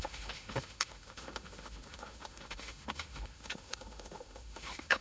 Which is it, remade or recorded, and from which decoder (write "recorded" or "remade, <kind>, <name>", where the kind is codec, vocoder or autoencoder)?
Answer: remade, autoencoder, DAC-VAE